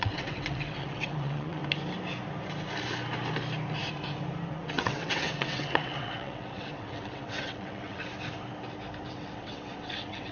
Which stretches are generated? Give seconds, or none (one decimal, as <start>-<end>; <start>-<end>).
0.0-1.6; 4.5-8.0; 9.1-10.3